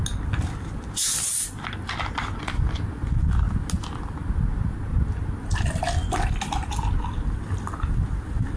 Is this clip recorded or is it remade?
recorded